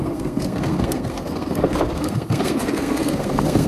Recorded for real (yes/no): no